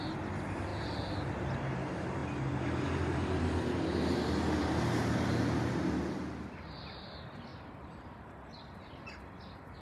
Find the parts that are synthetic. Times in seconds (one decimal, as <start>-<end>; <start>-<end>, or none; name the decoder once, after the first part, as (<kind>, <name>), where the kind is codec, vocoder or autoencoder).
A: 7.5-9.0 (vocoder, BigVGAN v2)